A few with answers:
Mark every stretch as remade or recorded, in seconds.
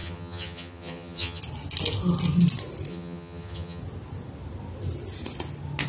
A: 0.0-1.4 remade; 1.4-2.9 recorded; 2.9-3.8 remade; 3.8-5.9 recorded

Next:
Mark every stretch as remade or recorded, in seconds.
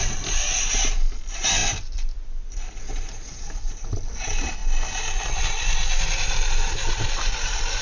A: 0.0-7.8 recorded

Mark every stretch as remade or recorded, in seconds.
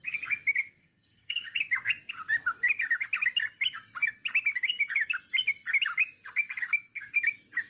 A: 0.0-0.8 recorded; 0.8-1.6 remade; 1.6-7.7 recorded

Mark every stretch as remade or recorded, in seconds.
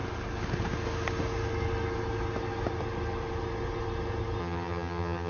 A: 0.0-4.4 recorded; 4.4-5.3 remade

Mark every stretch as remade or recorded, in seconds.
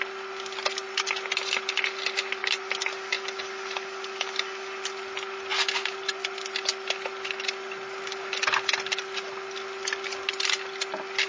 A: 0.0-11.3 recorded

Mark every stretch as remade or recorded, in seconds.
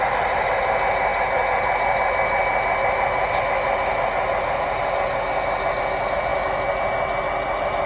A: 0.0-7.9 recorded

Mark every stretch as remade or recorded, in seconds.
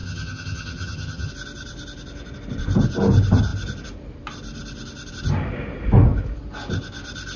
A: 0.0-1.3 remade; 1.3-7.4 recorded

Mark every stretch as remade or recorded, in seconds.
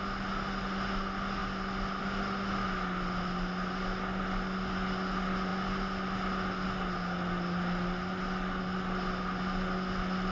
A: 0.0-10.3 recorded